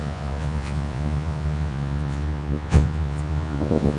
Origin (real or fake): fake